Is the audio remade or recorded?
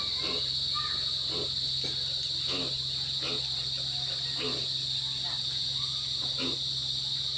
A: recorded